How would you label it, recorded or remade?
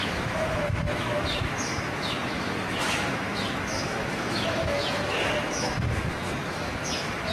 remade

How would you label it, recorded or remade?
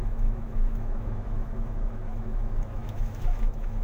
remade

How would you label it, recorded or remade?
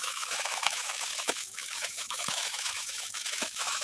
remade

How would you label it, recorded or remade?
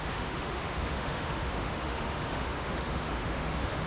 remade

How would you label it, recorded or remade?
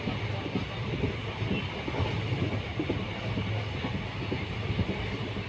recorded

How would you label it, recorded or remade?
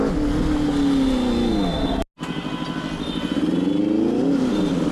recorded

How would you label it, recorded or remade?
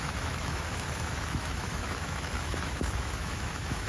remade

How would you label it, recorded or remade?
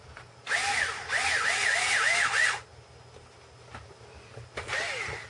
recorded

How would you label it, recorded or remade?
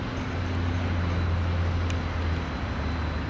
recorded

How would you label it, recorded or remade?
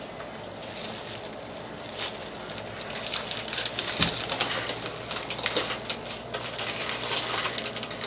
recorded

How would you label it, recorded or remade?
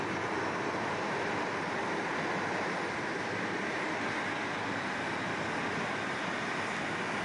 recorded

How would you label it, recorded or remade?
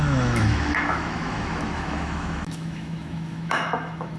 remade